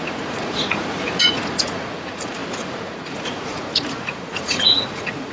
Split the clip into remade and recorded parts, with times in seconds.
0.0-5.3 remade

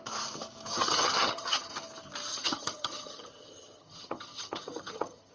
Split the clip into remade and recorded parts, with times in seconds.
0.0-0.7 recorded; 0.7-1.7 remade; 1.7-2.3 recorded; 2.3-5.3 remade

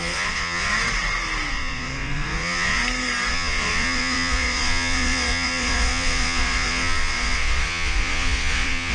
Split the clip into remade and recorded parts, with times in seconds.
0.0-0.7 remade; 0.7-1.5 recorded; 1.5-2.8 remade; 2.8-3.3 recorded; 3.3-8.9 remade